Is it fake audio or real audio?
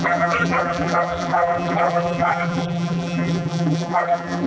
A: fake